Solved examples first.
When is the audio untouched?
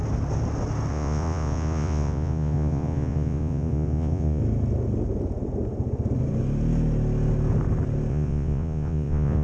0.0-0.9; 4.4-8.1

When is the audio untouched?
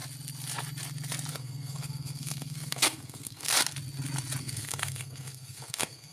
0.0-1.3; 3.5-4.4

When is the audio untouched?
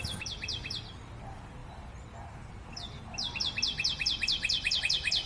0.0-5.3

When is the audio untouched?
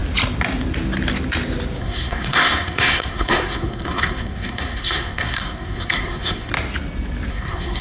0.0-1.8; 6.5-7.3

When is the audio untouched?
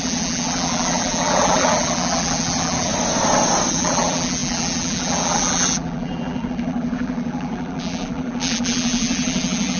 2.9-3.7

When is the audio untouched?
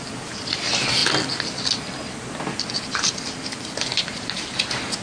0.0-5.0